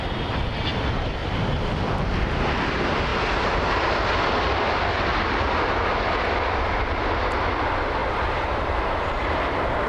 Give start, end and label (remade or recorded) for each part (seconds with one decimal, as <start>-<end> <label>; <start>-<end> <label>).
0.0-1.2 recorded; 1.2-2.5 remade; 2.5-8.0 recorded; 8.0-9.9 remade